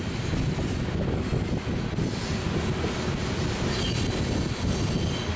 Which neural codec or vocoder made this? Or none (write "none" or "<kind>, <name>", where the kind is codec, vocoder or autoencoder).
none